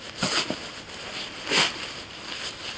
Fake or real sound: real